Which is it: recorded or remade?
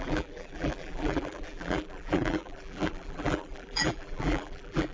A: remade